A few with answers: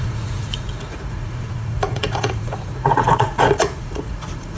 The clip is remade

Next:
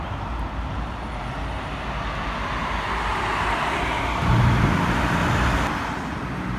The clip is recorded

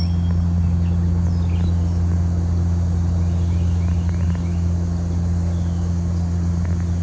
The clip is recorded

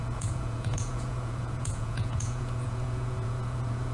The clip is remade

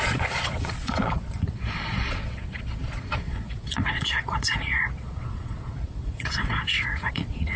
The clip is remade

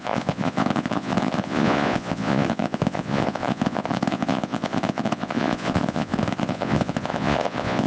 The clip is remade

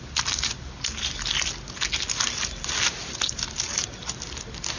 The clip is recorded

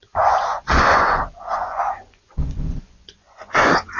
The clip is remade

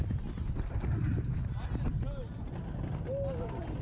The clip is recorded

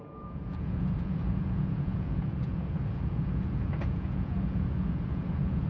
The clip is remade